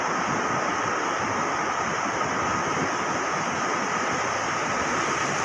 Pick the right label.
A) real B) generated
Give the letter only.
A